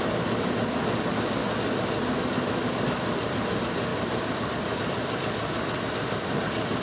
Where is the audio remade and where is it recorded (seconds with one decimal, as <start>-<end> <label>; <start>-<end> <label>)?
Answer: 0.0-6.8 recorded